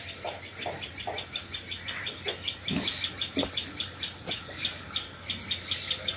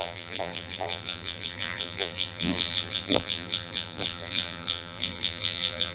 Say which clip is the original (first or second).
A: first